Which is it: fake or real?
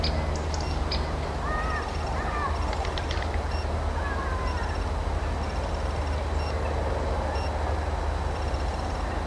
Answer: real